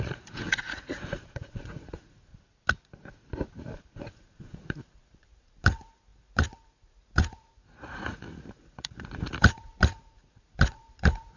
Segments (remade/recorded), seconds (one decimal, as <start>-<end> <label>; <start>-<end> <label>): 0.0-2.3 remade; 2.3-4.0 recorded; 4.0-11.4 remade